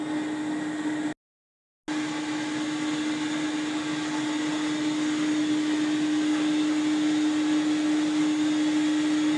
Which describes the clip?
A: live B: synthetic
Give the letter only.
A